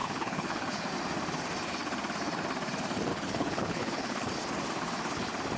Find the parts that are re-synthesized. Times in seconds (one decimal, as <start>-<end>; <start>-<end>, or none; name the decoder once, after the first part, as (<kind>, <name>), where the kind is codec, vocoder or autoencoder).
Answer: 0.0-0.9 (codec, HILCodec); 3.1-4.3